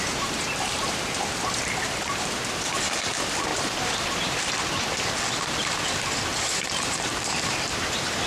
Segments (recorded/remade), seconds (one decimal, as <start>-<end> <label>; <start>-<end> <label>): 0.0-2.6 remade; 2.6-3.5 recorded; 3.5-4.4 remade; 4.4-6.3 recorded; 6.3-8.3 remade